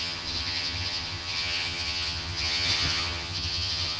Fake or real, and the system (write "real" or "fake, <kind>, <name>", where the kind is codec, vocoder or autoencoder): fake, vocoder, HiFi-GAN